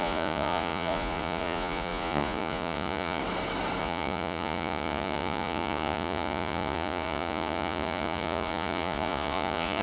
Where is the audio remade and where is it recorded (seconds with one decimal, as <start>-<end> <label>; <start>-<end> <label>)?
0.0-3.2 remade; 3.2-3.8 recorded; 3.8-9.8 remade